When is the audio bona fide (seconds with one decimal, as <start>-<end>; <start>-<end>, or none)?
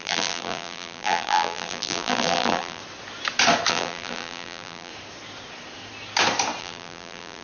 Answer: 2.8-3.7; 4.9-6.6